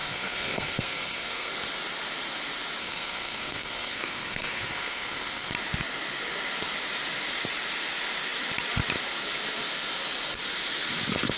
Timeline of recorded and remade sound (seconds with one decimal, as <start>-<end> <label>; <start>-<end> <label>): 0.0-1.5 remade; 1.5-2.8 recorded; 2.8-5.5 remade; 5.5-11.4 recorded